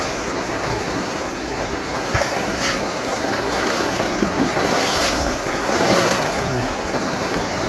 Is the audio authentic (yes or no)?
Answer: no